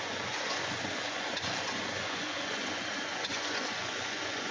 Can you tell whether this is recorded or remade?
remade